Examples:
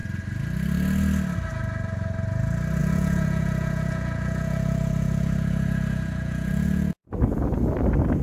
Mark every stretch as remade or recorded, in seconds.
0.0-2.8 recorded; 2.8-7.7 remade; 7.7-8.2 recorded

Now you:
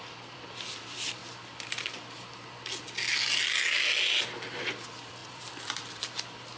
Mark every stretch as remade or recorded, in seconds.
0.0-1.2 remade; 1.2-4.6 recorded; 4.6-6.6 remade

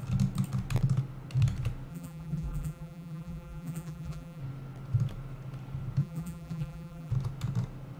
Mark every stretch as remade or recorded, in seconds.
0.0-1.9 recorded; 1.9-4.4 remade; 4.4-6.0 recorded; 6.0-7.1 remade; 7.1-8.0 recorded

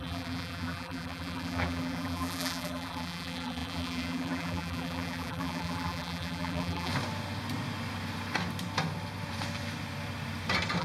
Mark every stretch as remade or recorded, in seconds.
0.0-6.9 remade; 6.9-10.8 recorded

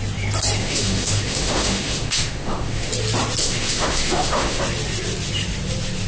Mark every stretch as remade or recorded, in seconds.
0.0-0.6 recorded; 0.6-2.9 remade; 2.9-3.4 recorded; 3.4-4.6 remade; 4.6-6.1 recorded

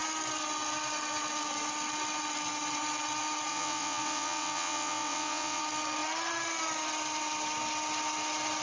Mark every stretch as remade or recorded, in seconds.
0.0-3.5 recorded; 3.5-5.6 remade; 5.6-8.6 recorded

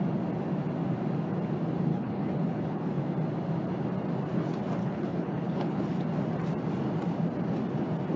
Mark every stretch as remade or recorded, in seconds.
0.0-1.9 recorded; 1.9-3.0 remade; 3.0-4.8 recorded; 4.8-5.8 remade; 5.8-8.2 recorded

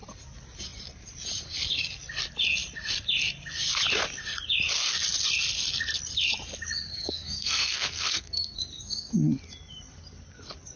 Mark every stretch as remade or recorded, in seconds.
0.0-6.9 recorded; 6.9-9.1 remade; 9.1-10.8 recorded